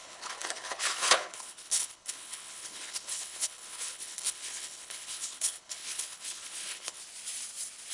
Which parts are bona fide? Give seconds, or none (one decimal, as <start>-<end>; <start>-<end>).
7.0-7.9